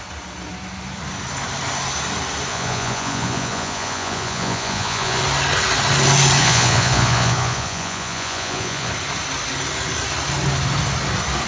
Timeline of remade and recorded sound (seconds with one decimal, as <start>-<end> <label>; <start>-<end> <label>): 0.0-2.5 recorded; 2.5-5.2 remade; 5.2-6.4 recorded; 6.4-8.9 remade; 8.9-11.5 recorded